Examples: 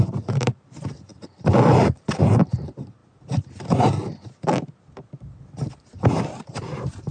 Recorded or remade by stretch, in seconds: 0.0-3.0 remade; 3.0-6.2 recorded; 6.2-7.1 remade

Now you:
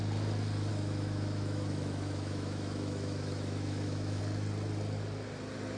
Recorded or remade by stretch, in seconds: 0.0-0.7 recorded; 0.7-4.2 remade; 4.2-5.8 recorded

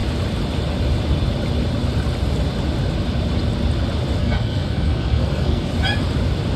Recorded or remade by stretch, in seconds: 0.0-4.2 recorded; 4.2-5.7 remade; 5.7-6.6 recorded

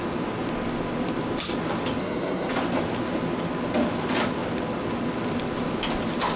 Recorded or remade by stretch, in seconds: 0.0-2.0 recorded; 2.0-2.5 remade; 2.5-6.4 recorded

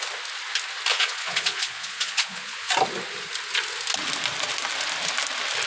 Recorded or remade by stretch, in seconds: 0.0-0.9 recorded; 0.9-2.7 remade; 2.7-5.7 recorded